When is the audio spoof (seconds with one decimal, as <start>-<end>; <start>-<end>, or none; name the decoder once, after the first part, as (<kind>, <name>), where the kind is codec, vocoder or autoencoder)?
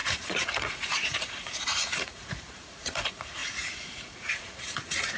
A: 0.0-5.2 (vocoder, Vocos)